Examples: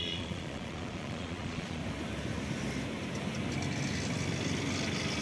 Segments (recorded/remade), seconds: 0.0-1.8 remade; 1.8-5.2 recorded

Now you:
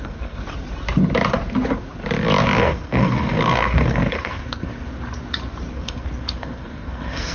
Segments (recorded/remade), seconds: 0.0-0.4 remade; 0.4-2.6 recorded; 2.6-4.7 remade; 4.7-5.7 recorded; 5.7-7.3 remade

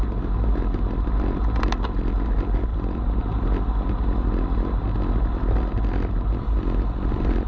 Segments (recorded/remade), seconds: 0.0-2.7 recorded; 2.7-3.2 remade; 3.2-7.5 recorded

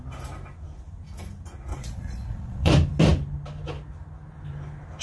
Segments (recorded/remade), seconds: 0.0-1.7 recorded; 1.7-2.7 remade; 2.7-5.0 recorded

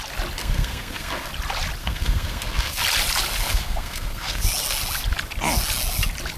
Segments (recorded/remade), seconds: 0.0-0.4 recorded; 0.4-1.3 remade; 1.3-1.8 recorded; 1.8-2.8 remade; 2.8-3.4 recorded; 3.4-4.4 remade; 4.4-6.4 recorded

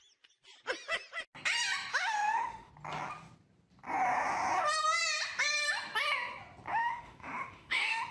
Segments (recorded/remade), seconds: 0.0-1.9 recorded; 1.9-2.7 remade; 2.7-6.7 recorded; 6.7-8.1 remade